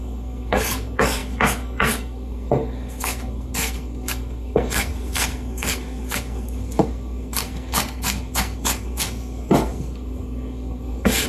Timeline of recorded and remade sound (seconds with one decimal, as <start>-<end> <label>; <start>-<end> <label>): 0.0-11.3 remade